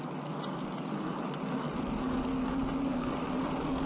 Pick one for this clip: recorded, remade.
recorded